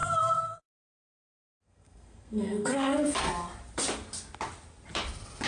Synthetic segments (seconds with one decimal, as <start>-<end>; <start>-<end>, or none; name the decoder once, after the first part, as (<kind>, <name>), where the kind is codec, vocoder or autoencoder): 0.0-3.3 (codec, SNAC)